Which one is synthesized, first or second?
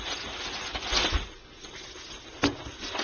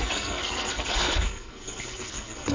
second